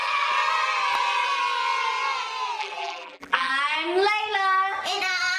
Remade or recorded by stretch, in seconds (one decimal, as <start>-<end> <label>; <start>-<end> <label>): 0.0-2.6 recorded; 2.6-3.5 remade; 3.5-5.4 recorded